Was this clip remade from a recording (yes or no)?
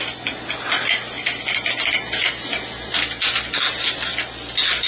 no